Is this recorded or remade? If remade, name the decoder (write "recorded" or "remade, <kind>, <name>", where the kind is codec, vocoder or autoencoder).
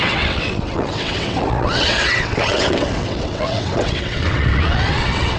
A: remade, vocoder, WaveNeXt